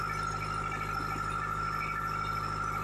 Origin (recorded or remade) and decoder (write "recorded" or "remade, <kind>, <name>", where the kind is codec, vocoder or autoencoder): recorded